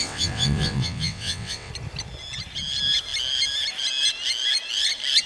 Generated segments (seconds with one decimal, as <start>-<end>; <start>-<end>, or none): 0.0-1.7